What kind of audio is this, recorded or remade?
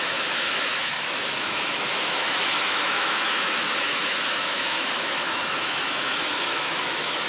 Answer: remade